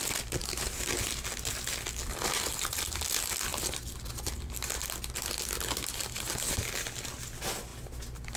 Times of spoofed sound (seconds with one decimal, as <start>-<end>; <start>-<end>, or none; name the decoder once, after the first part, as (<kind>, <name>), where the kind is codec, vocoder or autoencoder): 0.4-0.9 (vocoder, BigVGAN v2)